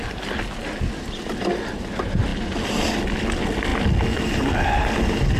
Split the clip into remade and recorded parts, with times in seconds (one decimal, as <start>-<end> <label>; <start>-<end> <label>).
0.0-5.4 recorded